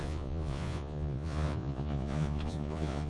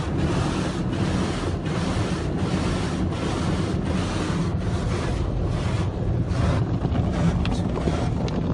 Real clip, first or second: second